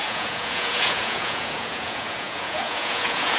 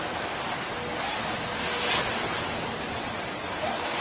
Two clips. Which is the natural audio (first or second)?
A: second